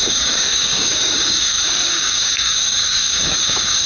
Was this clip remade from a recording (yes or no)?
yes